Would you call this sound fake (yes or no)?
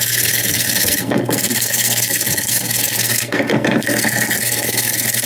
yes